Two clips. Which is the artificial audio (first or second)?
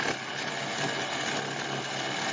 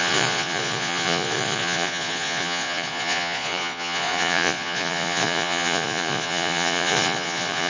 second